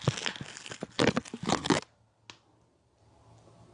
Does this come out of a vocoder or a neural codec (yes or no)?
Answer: no